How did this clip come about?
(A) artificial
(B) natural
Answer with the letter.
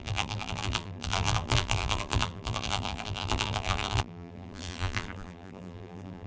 A